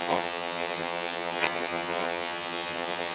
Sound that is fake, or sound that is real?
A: fake